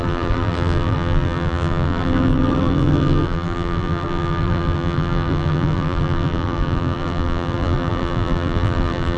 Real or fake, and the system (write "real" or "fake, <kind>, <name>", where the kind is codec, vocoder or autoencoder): fake, vocoder, BigVGAN v2